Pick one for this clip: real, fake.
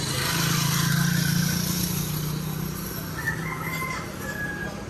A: real